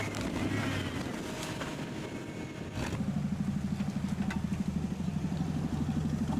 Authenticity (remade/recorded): recorded